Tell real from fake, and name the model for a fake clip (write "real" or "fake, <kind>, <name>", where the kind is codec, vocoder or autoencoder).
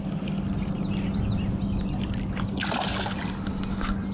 real